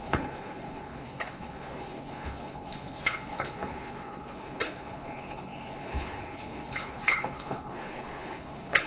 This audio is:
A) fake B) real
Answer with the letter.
A